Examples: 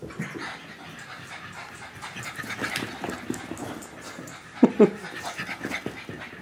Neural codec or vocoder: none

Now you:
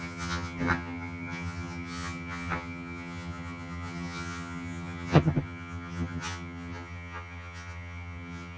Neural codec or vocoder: vocoder, HiFi-GAN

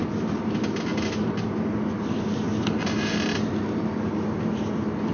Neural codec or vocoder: none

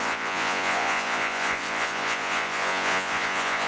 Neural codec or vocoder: vocoder, Vocos